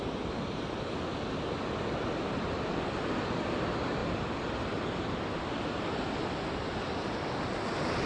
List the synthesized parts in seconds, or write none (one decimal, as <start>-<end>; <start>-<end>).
none